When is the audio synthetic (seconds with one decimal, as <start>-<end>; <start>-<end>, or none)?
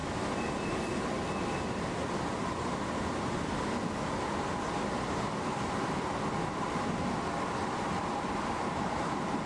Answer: none